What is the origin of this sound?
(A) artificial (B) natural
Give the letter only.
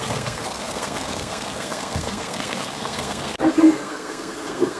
A